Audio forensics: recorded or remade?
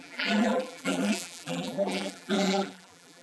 remade